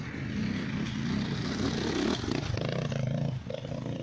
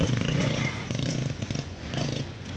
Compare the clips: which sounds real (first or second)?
first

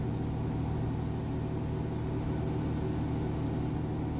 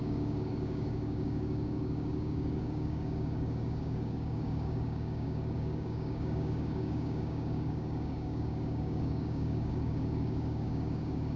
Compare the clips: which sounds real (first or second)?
first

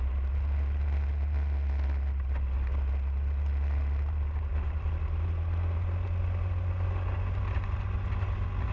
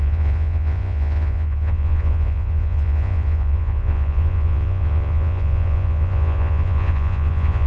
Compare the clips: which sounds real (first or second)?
first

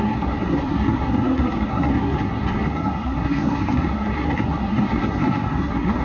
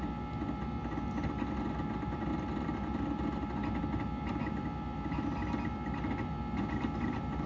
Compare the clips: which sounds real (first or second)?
second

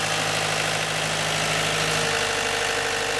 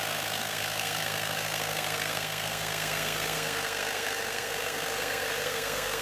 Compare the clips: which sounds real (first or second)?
first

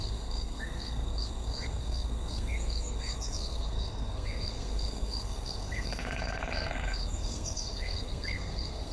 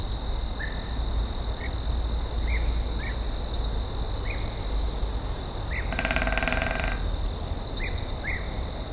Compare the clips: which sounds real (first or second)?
second